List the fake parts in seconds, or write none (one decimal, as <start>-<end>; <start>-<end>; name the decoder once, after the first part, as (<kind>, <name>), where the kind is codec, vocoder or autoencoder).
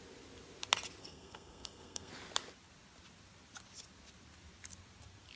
1.0-2.1 (codec, SNAC)